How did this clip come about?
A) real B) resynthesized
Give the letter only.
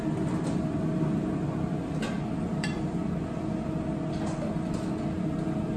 A